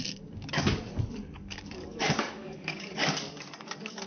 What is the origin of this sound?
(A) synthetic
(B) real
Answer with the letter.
A